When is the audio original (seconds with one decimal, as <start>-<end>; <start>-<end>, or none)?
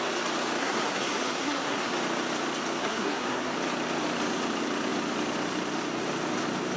0.0-0.6; 1.9-2.8; 3.5-6.8